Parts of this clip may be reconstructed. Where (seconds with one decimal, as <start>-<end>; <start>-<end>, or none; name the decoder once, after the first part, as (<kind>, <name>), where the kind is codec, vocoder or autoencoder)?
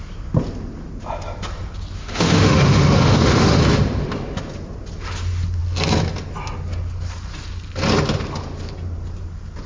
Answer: 2.0-3.6 (autoencoder, DAC-VAE)